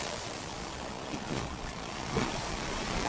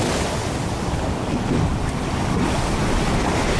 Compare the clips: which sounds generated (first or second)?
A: first